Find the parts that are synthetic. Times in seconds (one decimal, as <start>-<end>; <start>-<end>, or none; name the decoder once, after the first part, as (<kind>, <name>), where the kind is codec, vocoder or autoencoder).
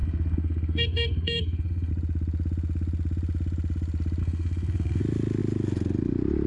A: 0.0-1.9 (codec, SNAC); 4.2-5.0